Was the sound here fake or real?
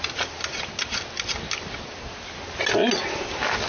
real